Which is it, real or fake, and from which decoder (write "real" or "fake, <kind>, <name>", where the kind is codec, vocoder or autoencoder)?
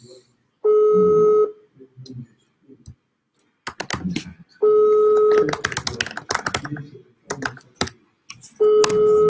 real